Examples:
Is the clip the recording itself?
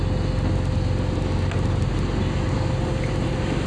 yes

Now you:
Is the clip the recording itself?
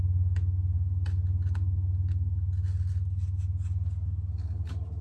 yes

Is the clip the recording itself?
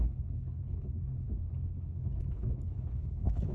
no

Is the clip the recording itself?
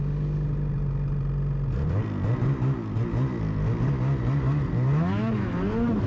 yes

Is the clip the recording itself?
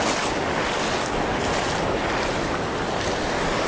yes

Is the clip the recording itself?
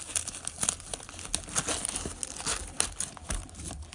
yes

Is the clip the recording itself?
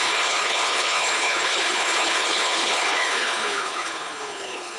no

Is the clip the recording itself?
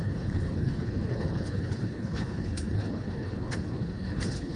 no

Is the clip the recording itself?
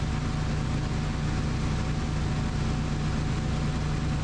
yes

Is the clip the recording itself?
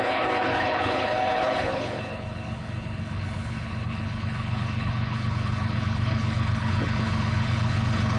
no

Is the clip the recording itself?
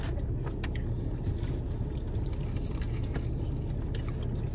yes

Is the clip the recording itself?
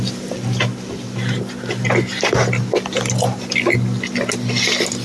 yes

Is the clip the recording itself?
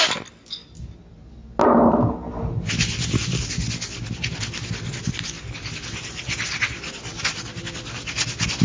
yes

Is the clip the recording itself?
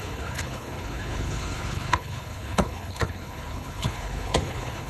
no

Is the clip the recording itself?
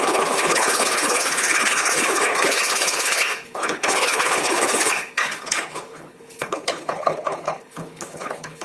no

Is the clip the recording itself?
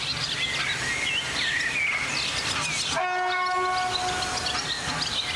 yes